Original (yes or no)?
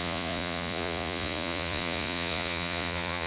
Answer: no